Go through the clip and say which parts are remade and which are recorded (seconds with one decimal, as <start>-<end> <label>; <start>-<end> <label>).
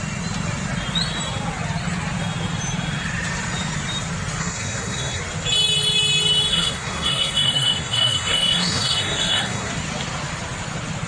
0.0-4.4 recorded; 4.4-5.2 remade; 5.2-6.5 recorded; 6.5-9.7 remade; 9.7-11.1 recorded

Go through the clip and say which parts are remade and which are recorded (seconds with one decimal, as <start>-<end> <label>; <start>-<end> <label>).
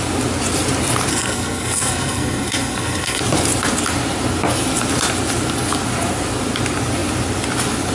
0.0-1.1 recorded; 1.1-3.2 remade; 3.2-7.9 recorded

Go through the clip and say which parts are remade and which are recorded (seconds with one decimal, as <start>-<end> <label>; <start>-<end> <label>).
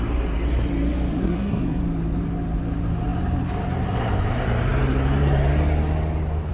0.0-1.1 recorded; 1.1-1.8 remade; 1.8-6.5 recorded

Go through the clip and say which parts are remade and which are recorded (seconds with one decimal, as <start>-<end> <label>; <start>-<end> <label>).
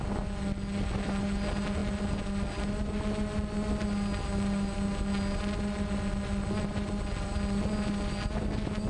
0.0-8.9 recorded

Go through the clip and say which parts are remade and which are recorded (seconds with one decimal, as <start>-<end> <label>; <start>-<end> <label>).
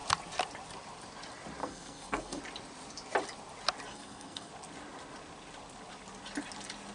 0.0-1.6 recorded; 1.6-2.4 remade; 2.4-3.9 recorded; 3.9-4.5 remade; 4.5-6.9 recorded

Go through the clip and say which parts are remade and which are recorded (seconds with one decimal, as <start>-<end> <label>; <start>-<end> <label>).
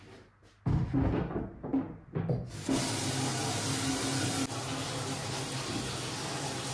0.0-6.7 recorded